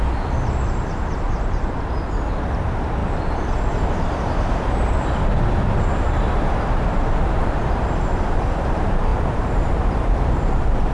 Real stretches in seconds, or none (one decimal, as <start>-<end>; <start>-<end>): 3.0-6.0